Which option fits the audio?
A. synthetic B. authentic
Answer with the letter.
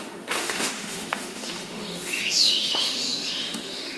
A